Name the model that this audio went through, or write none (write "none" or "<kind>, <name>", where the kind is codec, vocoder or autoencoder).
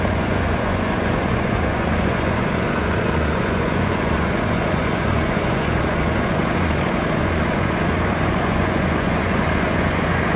vocoder, Vocos